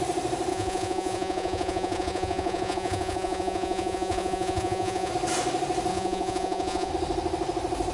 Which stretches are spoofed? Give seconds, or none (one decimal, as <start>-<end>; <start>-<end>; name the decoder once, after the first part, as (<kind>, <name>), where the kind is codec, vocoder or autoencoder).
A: 0.5-5.1 (vocoder, Vocos); 5.9-6.9